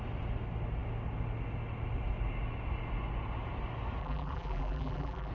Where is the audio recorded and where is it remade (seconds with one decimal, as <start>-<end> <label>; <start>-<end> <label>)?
0.0-4.0 recorded; 4.0-5.3 remade